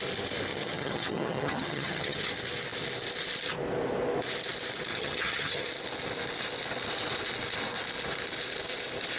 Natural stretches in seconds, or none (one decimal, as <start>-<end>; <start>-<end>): 0.0-0.5; 2.3-4.9; 5.7-9.2